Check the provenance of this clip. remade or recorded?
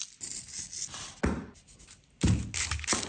recorded